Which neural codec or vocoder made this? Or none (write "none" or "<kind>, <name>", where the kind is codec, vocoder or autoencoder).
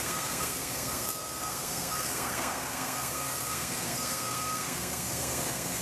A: codec, SNAC